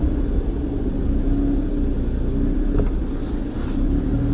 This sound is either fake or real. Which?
real